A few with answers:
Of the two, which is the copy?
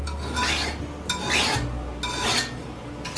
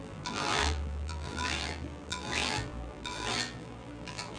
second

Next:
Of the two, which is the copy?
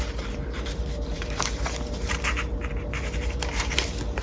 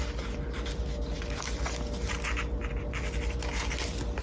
first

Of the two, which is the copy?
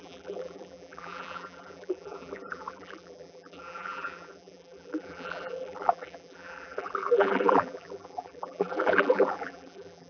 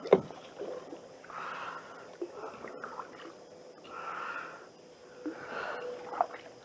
first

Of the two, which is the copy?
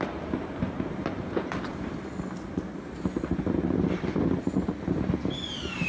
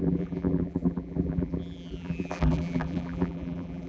second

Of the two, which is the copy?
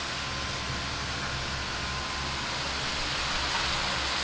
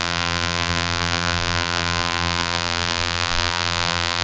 second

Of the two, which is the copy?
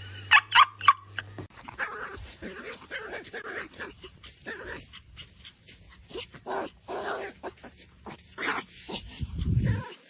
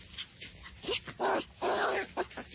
first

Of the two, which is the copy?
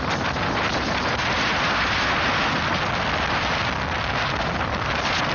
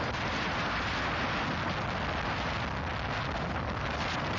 first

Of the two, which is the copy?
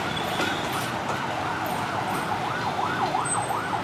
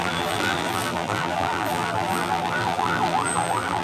second